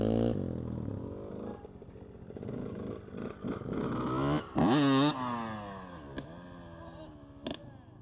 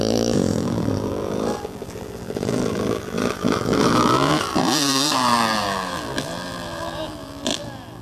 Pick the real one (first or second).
first